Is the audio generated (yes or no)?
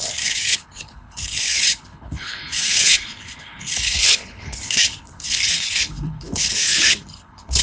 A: yes